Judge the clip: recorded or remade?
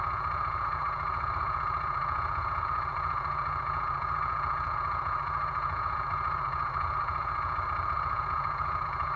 remade